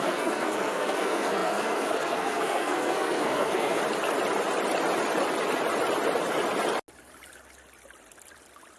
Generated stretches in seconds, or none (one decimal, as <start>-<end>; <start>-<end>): 0.0-3.8